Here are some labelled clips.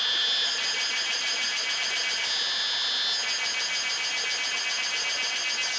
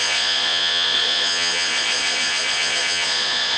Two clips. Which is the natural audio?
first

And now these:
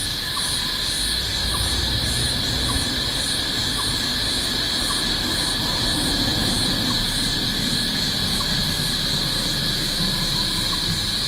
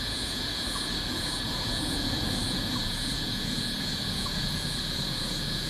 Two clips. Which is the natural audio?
first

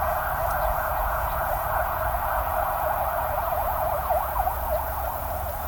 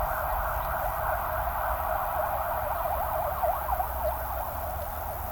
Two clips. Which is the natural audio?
second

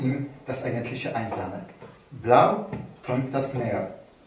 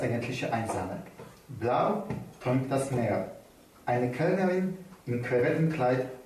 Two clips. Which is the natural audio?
second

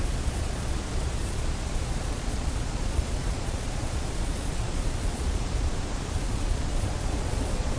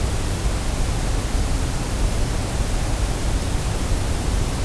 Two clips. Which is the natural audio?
second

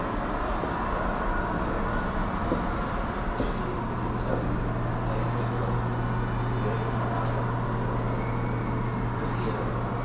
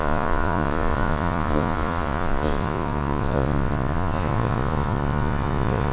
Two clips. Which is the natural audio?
first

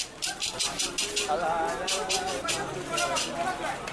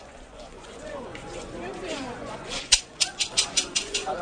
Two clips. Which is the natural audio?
first